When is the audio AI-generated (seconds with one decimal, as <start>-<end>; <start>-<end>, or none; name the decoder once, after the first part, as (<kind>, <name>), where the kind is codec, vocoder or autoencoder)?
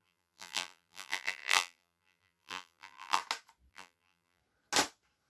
0.0-3.2 (vocoder, BigVGAN v2); 3.7-4.4